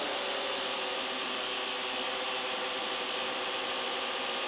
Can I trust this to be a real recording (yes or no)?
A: yes